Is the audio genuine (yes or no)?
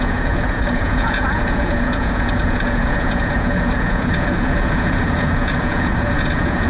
no